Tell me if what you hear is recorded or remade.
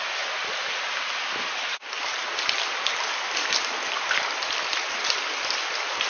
recorded